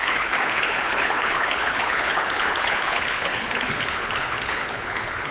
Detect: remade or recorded remade